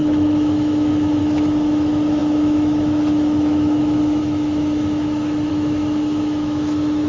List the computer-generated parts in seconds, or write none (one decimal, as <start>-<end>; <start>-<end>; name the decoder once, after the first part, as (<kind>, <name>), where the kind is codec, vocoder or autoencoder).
0.0-7.1 (autoencoder, DAC-VAE)

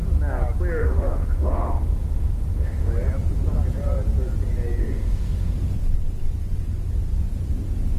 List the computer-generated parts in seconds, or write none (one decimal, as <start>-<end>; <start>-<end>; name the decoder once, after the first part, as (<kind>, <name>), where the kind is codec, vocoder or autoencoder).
0.8-2.9 (autoencoder, DAC-VAE); 4.8-5.5

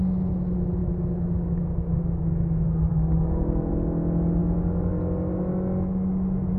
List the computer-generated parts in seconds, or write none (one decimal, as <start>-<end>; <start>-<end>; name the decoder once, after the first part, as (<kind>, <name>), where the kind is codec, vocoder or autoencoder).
0.8-2.2 (autoencoder, DAC-VAE); 2.9-3.7; 4.4-4.9

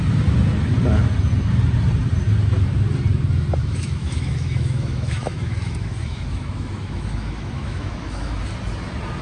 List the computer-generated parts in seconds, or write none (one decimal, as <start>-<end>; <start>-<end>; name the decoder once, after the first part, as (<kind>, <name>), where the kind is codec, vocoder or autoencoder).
3.6-8.4 (autoencoder, DAC-VAE)

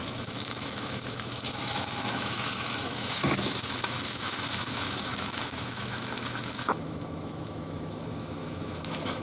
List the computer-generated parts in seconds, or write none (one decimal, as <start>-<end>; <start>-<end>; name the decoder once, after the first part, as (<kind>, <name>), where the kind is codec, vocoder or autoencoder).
0.0-9.2 (autoencoder, DAC-VAE)